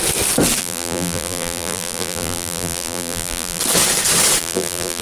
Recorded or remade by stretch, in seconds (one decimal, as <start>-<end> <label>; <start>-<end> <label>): 0.0-0.6 recorded; 0.6-3.6 remade; 3.6-4.4 recorded; 4.4-5.0 remade